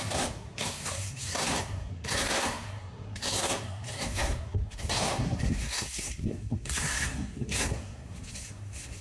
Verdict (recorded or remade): remade